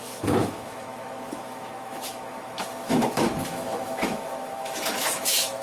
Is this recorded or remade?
remade